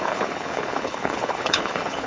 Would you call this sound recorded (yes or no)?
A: no